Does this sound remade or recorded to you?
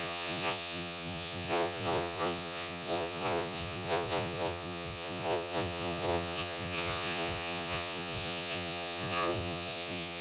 remade